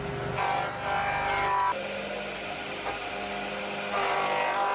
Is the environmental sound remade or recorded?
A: recorded